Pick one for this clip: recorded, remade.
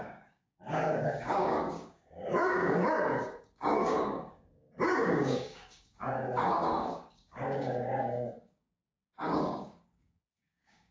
remade